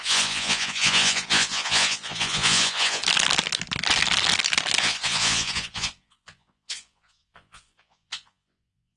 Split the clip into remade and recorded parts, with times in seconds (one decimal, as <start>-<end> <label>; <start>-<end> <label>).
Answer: 0.0-3.0 remade; 3.0-4.8 recorded; 4.8-9.0 remade